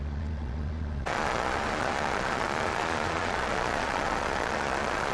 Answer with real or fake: fake